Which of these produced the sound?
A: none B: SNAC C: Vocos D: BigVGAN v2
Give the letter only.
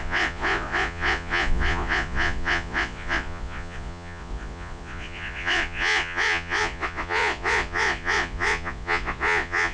C